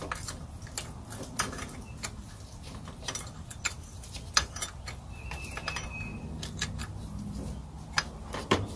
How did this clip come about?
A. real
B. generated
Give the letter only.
A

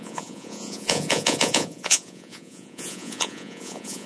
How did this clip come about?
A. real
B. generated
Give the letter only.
B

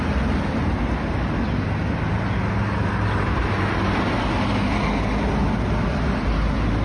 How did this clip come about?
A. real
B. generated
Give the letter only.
A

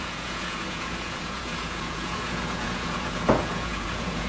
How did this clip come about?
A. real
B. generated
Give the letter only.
B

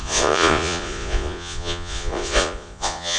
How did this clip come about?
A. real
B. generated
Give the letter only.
B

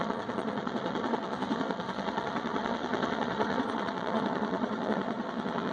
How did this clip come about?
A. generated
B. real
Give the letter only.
A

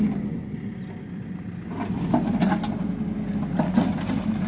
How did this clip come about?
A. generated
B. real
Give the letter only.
B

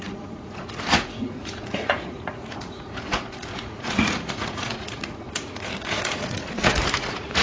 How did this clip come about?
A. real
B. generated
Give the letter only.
B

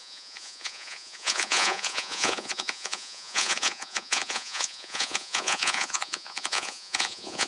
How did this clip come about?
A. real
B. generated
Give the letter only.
B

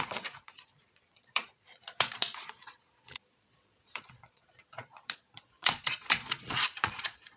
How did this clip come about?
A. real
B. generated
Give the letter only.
B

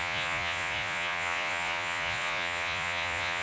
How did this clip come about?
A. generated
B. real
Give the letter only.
A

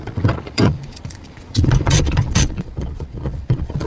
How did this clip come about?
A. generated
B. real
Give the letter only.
A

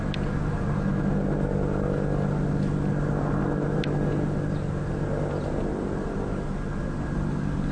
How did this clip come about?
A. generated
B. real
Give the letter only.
B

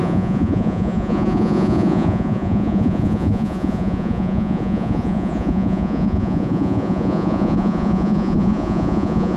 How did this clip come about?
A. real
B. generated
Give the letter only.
B